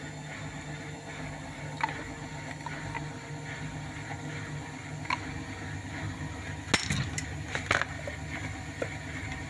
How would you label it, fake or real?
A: real